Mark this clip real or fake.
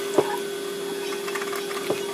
real